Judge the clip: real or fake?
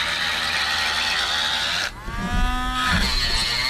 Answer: real